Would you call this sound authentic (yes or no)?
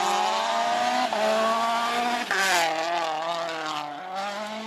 yes